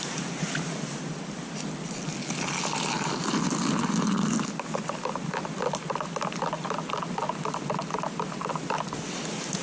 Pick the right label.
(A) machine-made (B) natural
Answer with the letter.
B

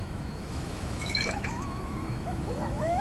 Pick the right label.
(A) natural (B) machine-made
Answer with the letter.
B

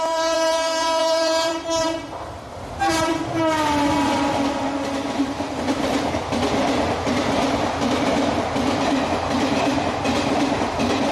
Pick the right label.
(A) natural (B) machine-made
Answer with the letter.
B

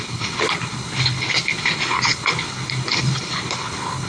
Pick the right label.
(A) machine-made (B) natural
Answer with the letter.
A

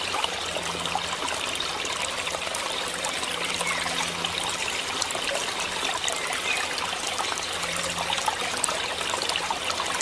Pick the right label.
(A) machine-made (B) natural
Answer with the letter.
B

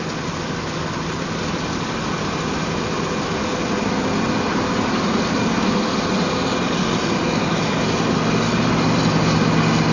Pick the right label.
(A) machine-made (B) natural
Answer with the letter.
B